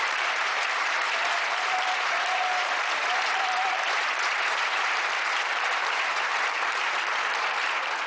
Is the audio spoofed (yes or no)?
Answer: yes